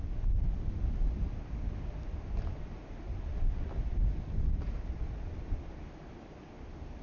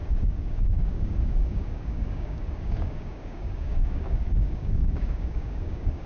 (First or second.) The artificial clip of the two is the second